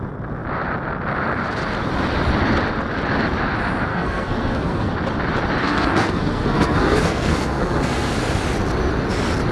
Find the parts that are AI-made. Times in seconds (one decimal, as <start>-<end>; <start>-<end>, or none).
3.9-4.9; 5.6-8.2